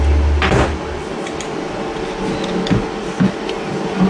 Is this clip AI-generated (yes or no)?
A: no